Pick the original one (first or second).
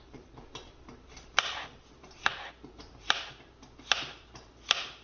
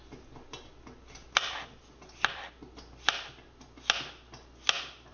second